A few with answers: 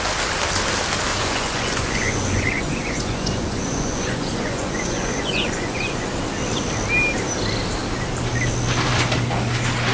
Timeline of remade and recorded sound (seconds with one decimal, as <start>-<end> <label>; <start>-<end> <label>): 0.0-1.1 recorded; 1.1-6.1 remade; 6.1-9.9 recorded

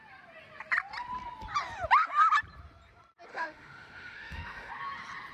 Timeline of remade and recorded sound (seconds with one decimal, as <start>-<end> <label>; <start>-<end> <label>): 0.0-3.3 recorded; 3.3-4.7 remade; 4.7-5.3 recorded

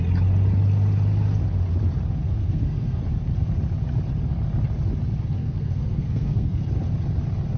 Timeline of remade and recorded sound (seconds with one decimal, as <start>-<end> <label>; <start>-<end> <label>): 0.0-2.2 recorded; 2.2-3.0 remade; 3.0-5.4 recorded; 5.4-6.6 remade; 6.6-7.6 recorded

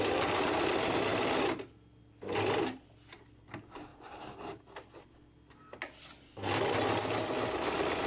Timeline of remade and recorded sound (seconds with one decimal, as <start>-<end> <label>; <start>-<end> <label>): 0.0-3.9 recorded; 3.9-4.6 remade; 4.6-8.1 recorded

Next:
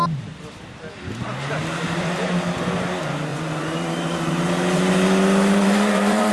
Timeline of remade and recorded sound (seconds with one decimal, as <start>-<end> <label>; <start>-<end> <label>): 0.0-3.3 recorded; 3.3-4.3 remade; 4.3-5.6 recorded; 5.6-6.3 remade